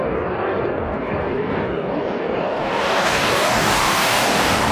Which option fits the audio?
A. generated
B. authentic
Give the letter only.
A